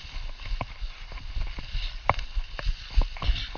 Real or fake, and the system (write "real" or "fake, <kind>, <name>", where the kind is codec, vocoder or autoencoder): real